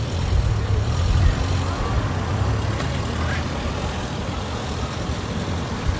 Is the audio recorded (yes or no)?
yes